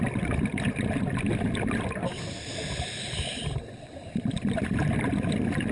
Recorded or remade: recorded